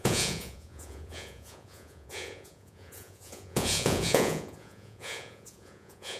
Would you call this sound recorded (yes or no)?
no